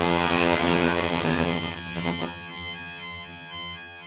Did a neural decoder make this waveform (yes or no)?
yes